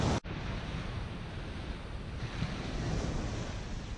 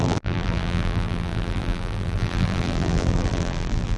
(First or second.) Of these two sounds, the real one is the first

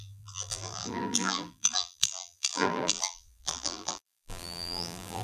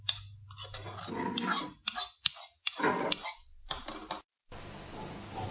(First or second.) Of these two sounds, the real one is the second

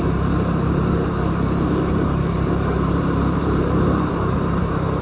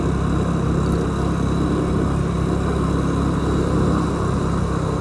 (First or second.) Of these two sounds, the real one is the second